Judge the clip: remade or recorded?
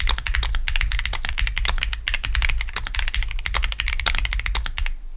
recorded